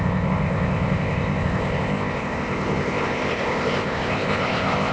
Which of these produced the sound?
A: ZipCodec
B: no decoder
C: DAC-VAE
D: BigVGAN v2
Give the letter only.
A